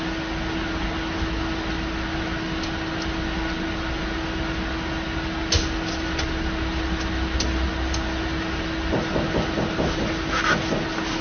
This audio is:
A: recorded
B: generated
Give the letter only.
A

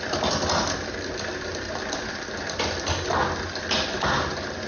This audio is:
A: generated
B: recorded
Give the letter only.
B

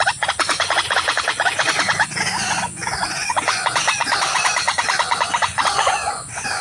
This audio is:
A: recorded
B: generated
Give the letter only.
B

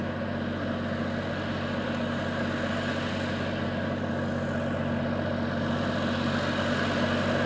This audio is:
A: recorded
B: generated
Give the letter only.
A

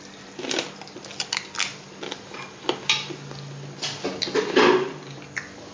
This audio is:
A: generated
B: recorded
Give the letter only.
B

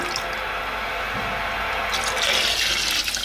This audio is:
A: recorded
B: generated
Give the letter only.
A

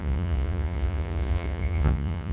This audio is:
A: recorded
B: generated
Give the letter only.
B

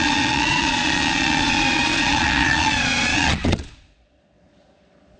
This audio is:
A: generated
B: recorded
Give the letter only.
A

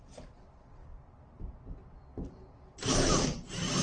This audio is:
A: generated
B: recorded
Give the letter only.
B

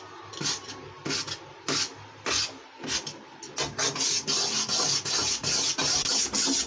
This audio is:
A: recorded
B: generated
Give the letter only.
A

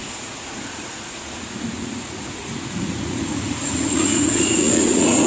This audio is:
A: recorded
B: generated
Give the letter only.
B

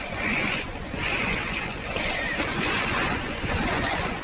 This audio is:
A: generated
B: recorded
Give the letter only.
A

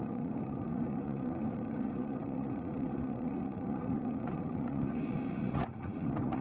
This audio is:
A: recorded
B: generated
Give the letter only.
B